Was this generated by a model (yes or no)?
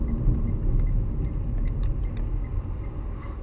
no